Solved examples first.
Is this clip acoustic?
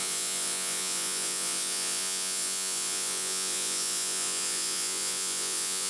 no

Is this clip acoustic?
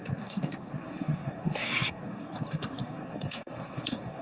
no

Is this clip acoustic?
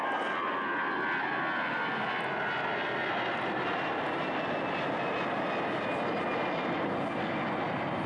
yes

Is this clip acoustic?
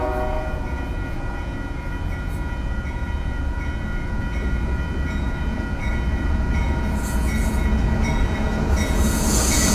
no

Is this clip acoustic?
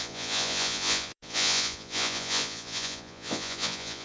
no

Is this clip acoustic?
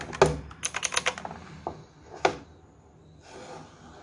yes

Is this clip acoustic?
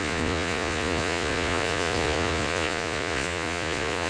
no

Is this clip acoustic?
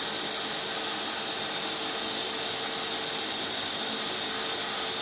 yes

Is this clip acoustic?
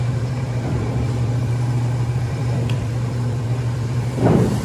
no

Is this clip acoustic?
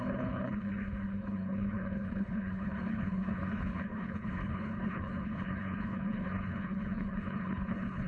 no